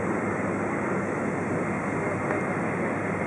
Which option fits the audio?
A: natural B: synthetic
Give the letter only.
A